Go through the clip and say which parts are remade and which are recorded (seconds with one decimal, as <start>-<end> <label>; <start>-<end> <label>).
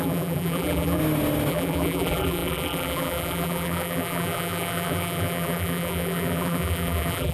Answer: 0.0-1.0 remade; 1.0-1.5 recorded; 1.5-7.3 remade